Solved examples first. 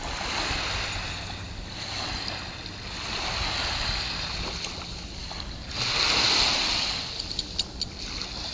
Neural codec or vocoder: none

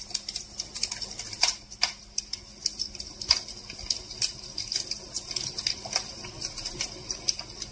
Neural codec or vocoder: none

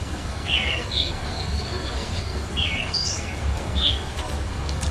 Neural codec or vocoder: codec, SNAC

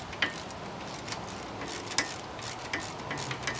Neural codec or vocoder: none